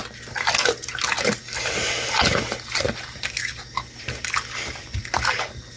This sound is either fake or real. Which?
real